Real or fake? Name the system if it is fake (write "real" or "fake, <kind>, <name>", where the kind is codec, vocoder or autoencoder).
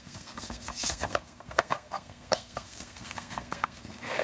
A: fake, codec, SNAC